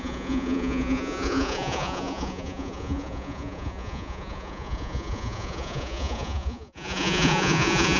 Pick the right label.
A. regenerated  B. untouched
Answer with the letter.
A